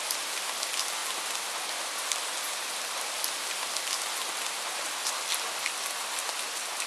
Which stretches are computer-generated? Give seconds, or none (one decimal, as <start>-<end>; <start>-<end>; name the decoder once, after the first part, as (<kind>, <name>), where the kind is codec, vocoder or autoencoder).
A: none